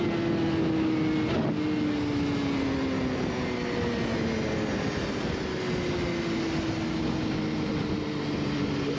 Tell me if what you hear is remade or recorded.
recorded